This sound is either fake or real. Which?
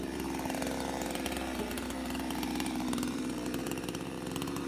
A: fake